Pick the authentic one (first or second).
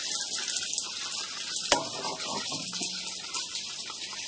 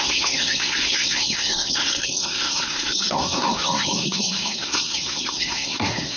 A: first